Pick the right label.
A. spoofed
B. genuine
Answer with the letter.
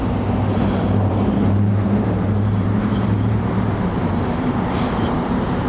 A